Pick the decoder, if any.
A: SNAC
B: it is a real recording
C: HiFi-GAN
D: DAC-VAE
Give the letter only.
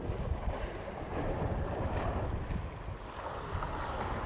B